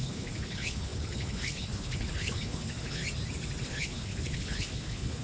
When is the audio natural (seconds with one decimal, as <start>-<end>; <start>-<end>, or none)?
3.0-3.6